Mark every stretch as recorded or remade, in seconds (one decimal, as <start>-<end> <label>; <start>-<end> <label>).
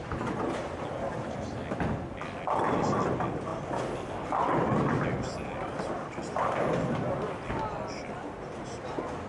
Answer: 0.0-9.3 recorded